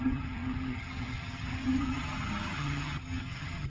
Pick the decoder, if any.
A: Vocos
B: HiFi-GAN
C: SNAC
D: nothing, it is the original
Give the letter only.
B